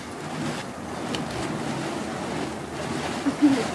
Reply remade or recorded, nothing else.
recorded